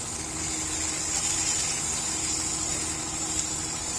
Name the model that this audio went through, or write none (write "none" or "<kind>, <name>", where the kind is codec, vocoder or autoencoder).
none